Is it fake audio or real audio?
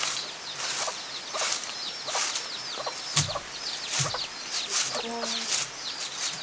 real